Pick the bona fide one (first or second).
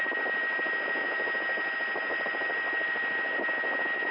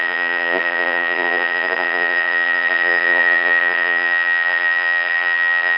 first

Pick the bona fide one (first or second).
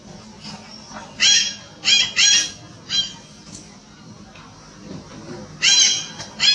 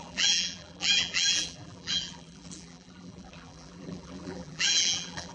first